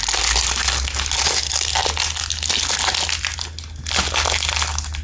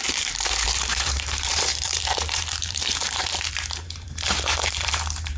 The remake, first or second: second